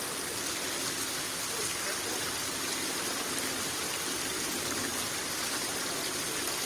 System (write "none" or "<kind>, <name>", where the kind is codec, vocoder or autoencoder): none